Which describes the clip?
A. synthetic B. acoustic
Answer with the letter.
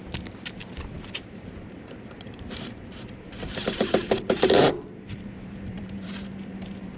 A